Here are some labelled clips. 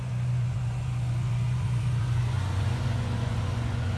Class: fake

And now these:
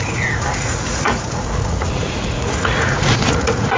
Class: fake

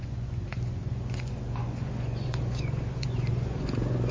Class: fake